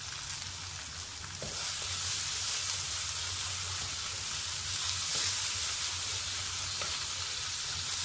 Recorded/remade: recorded